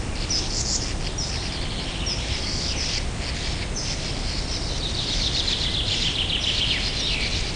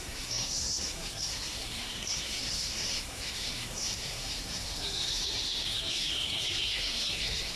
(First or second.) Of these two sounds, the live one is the first